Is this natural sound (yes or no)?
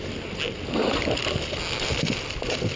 yes